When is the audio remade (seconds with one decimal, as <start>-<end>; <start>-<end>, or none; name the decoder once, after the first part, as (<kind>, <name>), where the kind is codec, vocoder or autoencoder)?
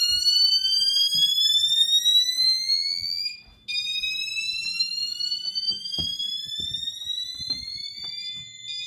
2.5-3.2 (vocoder, BigVGAN v2)